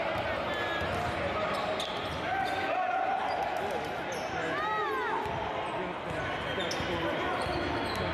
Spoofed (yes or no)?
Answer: no